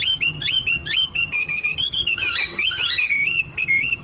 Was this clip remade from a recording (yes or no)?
yes